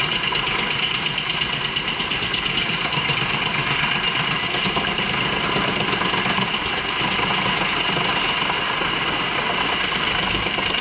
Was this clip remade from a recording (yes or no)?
no